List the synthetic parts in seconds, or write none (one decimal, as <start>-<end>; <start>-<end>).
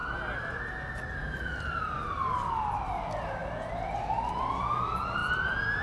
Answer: none